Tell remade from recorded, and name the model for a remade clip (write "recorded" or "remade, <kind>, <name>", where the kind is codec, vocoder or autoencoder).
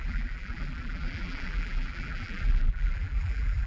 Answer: remade, vocoder, BigVGAN v2